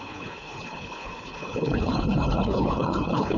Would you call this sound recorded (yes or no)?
no